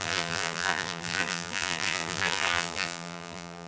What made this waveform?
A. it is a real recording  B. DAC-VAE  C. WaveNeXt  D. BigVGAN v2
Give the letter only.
D